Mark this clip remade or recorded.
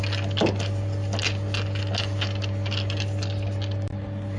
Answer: recorded